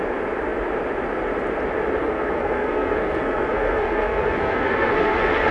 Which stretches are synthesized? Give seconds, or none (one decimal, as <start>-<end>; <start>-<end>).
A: 2.0-5.5